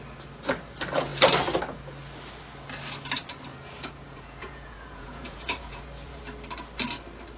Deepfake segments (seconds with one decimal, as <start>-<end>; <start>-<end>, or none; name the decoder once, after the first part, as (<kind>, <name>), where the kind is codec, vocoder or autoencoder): 3.5-6.2 (vocoder, Vocos)